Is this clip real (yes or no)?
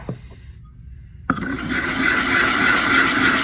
yes